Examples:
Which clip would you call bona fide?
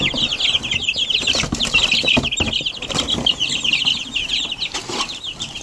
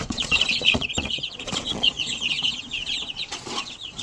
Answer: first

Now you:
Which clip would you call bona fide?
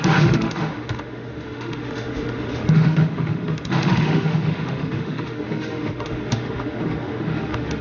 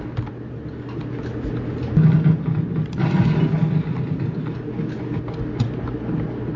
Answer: second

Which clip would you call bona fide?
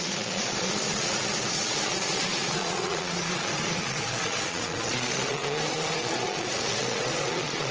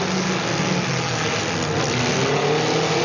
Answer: second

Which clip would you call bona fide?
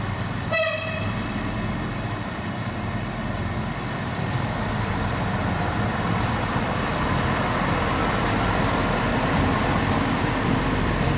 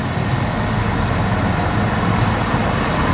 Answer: second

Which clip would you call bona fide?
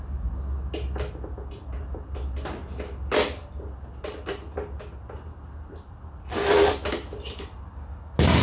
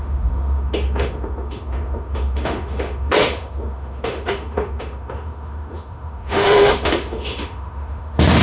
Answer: first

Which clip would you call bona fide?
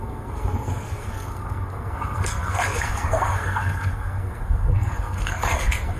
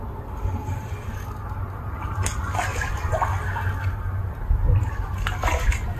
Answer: second